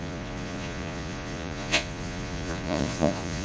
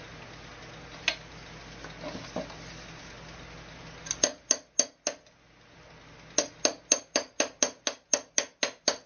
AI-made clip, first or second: first